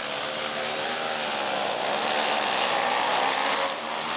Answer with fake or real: real